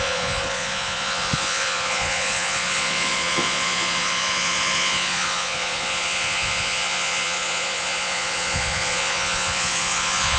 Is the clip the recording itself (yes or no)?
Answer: no